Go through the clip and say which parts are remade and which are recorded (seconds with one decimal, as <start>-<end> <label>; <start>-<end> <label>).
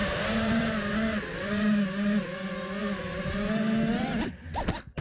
0.0-0.9 remade; 0.9-2.8 recorded; 2.8-3.9 remade; 3.9-5.0 recorded